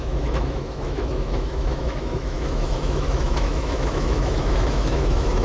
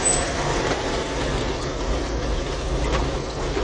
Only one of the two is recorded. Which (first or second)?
second